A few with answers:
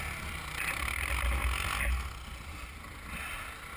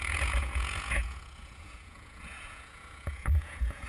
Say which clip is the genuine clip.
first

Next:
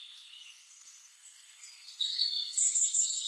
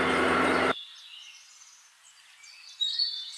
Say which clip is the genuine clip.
second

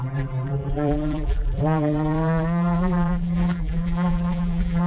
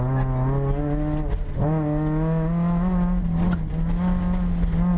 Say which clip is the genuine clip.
second